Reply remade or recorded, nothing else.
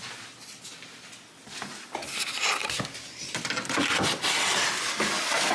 recorded